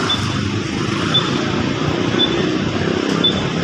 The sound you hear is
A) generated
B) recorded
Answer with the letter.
A